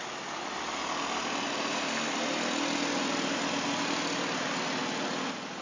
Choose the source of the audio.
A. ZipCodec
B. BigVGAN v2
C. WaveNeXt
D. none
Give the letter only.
D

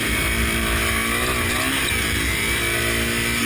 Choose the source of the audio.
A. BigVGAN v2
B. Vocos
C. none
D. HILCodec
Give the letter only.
C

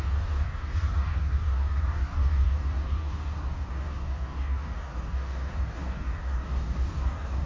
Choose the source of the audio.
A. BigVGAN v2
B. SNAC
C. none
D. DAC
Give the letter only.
D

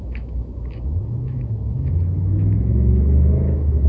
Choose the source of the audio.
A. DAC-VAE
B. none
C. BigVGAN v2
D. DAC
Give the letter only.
A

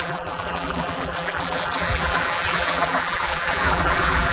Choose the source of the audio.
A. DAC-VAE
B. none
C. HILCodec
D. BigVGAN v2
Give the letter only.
D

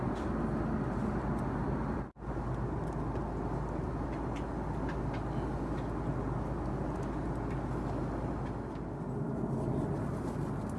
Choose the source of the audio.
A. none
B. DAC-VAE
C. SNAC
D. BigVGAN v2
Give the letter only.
A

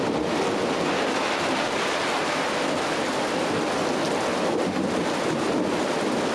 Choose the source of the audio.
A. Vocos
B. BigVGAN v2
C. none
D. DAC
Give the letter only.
C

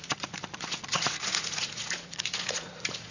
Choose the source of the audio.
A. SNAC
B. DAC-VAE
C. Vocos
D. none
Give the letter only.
C